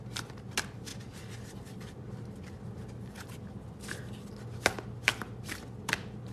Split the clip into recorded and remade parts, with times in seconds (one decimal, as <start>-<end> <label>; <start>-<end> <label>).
0.0-0.9 recorded; 0.9-1.5 remade; 1.5-6.3 recorded